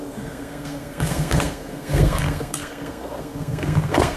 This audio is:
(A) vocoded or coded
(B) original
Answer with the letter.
A